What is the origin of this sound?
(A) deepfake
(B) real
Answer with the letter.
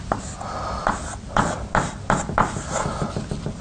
B